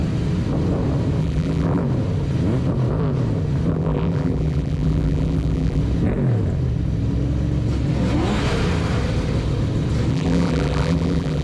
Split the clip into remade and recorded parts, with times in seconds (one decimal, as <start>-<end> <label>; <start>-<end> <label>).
0.0-1.2 recorded; 1.2-1.8 remade; 1.8-3.7 recorded; 3.7-5.8 remade; 5.8-10.1 recorded; 10.1-11.4 remade

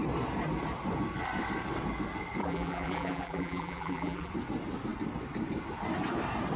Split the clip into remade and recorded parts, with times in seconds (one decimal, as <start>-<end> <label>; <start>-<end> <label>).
0.0-2.4 recorded; 2.4-4.3 remade; 4.3-6.6 recorded